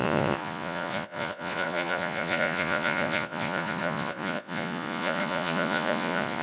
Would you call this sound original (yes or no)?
no